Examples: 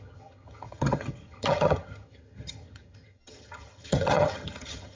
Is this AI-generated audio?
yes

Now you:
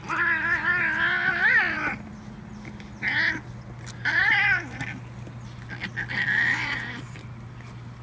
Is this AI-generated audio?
no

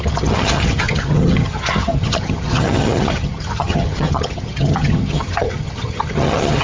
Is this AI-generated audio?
yes